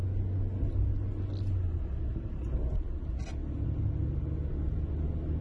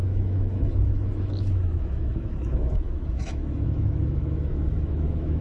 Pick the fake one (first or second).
second